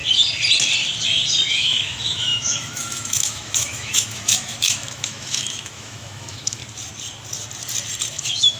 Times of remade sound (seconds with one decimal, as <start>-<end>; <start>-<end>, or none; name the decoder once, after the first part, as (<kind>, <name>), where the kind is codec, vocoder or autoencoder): 1.5-6.6 (autoencoder, DAC-VAE); 8.1-8.6